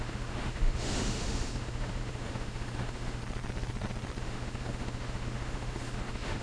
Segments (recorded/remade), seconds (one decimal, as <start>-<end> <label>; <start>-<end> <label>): 0.0-3.2 remade; 3.2-4.2 recorded; 4.2-6.4 remade